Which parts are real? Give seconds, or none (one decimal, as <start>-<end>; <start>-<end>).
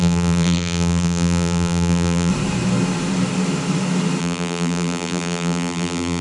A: 2.3-4.2